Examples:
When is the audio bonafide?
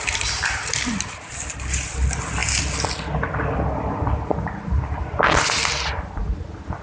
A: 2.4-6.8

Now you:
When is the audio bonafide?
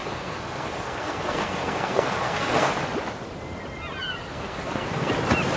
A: 2.7-4.3; 5.1-5.6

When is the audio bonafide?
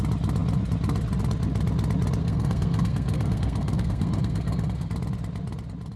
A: 0.0-2.2; 4.9-6.0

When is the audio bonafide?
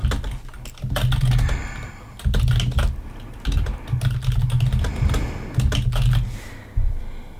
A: 0.0-7.4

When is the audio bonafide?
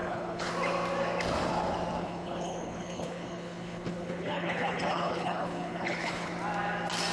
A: 0.5-2.0; 6.3-7.1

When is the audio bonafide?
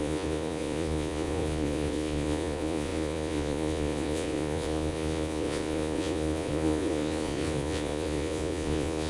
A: none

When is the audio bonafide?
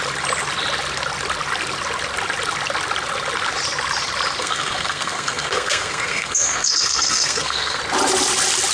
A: 0.0-4.4; 7.8-8.7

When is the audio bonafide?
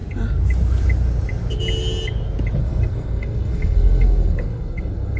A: 0.0-2.6